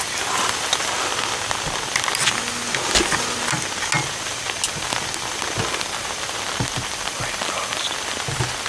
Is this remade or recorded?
recorded